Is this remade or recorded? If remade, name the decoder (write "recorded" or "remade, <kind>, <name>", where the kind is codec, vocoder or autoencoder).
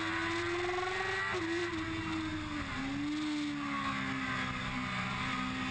recorded